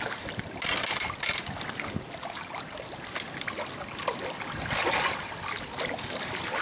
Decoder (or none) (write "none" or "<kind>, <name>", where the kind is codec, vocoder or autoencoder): none